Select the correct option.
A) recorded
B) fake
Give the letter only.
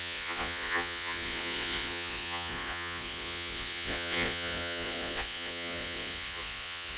B